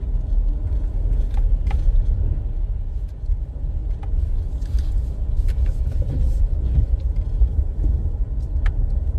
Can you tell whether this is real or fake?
real